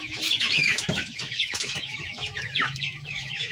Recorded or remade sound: remade